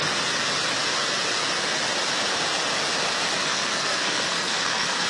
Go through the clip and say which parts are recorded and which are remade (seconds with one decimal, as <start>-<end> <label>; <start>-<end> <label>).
0.0-3.4 recorded; 3.4-5.1 remade